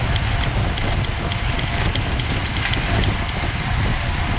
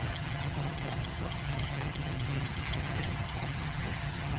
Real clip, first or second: first